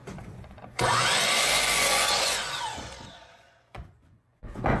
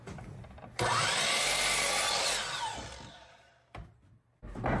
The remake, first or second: first